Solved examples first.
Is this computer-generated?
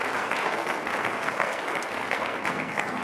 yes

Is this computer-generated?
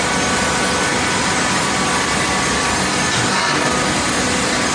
no